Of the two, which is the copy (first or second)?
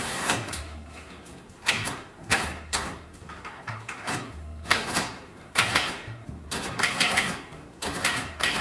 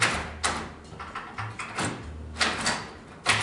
first